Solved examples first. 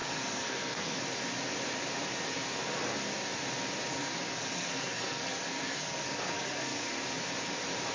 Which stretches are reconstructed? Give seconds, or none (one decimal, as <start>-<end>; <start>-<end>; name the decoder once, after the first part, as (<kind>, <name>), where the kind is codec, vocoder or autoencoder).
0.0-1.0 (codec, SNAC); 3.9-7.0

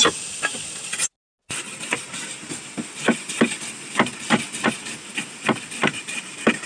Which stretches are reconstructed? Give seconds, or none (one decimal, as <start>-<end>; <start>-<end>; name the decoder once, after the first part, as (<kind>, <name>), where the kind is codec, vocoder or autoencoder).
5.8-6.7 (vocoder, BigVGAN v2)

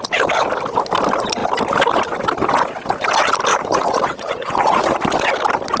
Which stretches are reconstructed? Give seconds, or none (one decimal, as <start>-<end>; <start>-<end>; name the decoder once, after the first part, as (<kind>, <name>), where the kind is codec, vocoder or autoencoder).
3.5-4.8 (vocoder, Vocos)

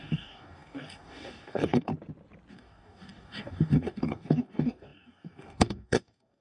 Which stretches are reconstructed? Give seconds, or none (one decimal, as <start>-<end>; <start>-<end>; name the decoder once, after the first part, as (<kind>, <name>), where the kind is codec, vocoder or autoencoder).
0.0-1.9 (codec, DAC); 2.5-6.4

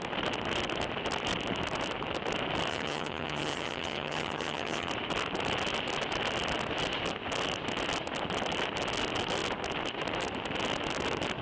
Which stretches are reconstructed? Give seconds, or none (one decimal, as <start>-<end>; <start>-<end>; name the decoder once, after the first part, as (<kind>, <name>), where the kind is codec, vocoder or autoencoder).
2.7-4.9 (vocoder, HiFi-GAN)

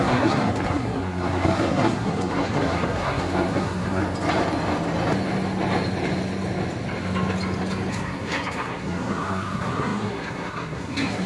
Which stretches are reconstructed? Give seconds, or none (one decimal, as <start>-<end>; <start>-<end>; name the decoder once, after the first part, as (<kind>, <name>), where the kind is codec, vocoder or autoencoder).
0.0-4.0 (codec, SNAC); 7.9-11.3

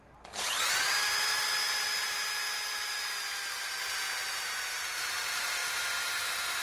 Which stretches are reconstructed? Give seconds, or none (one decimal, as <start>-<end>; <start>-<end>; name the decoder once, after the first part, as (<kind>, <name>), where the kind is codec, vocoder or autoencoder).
0.0-2.2 (vocoder, BigVGAN v2); 4.3-5.6

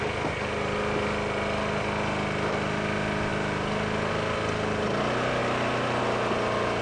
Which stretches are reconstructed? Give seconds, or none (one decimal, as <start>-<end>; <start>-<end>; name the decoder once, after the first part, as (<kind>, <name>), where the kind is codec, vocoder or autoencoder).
none